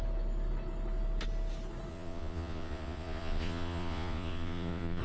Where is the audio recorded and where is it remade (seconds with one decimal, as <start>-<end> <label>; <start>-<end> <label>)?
0.0-1.9 recorded; 1.9-5.0 remade